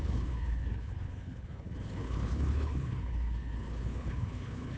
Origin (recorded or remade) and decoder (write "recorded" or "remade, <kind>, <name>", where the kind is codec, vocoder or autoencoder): remade, codec, HILCodec